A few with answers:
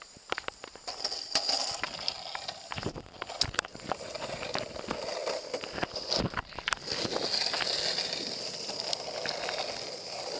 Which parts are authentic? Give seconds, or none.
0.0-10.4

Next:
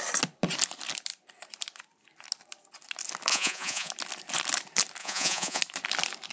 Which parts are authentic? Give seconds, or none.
0.0-3.3; 3.9-5.0; 5.6-6.3

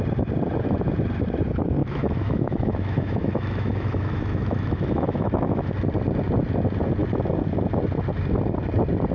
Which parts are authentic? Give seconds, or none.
0.0-1.8; 5.7-9.1

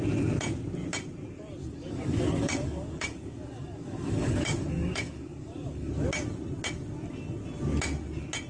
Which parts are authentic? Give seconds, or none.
0.0-1.6; 5.9-8.5

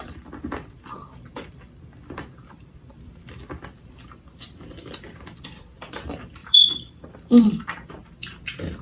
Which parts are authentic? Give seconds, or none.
8.0-8.8

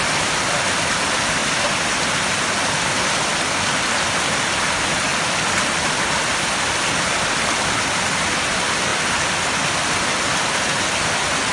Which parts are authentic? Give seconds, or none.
0.0-11.5